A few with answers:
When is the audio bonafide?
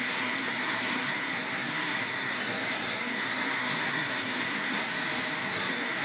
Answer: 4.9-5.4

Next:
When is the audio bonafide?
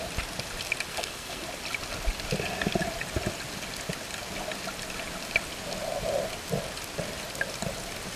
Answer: 0.0-0.9; 1.4-8.2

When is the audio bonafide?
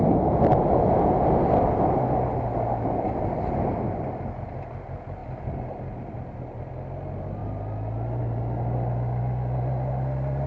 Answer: 0.0-10.5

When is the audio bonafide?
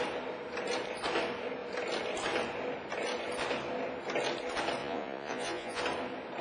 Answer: 0.0-4.8; 5.8-6.4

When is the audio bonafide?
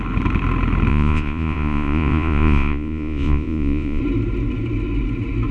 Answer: 0.0-0.9; 4.0-5.5